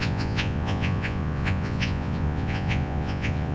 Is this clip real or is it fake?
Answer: fake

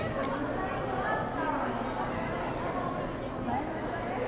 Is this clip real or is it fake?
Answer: real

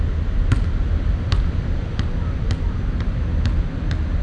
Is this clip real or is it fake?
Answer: real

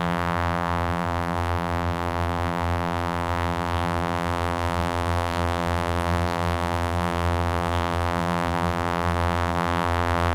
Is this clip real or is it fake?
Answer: fake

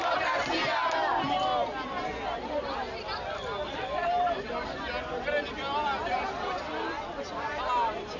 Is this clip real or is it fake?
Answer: real